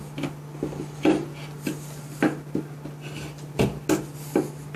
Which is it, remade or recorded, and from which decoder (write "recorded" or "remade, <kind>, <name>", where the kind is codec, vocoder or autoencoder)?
recorded